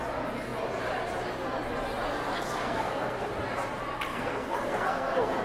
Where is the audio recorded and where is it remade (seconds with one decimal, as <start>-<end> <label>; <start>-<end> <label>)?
0.0-2.3 recorded; 2.3-3.3 remade; 3.3-4.1 recorded; 4.1-5.4 remade